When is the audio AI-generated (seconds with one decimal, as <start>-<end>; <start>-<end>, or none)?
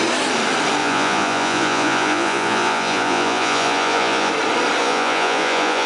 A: 0.8-4.3; 4.8-5.9